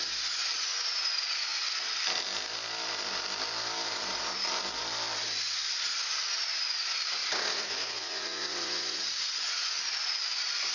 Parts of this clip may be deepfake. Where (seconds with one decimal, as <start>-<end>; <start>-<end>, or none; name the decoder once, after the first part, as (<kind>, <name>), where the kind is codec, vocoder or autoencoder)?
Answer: 7.2-9.8 (vocoder, Vocos)